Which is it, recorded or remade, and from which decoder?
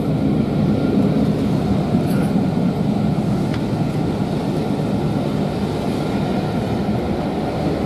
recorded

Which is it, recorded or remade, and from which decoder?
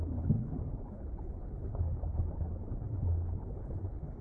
remade, codec, HILCodec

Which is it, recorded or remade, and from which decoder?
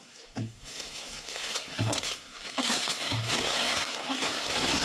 remade, codec, SNAC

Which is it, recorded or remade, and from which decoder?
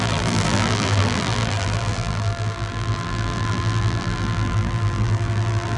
remade, vocoder, BigVGAN v2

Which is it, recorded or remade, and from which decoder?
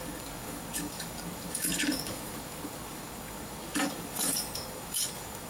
remade, codec, DAC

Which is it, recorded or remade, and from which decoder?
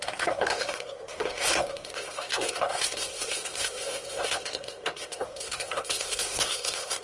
remade, codec, SNAC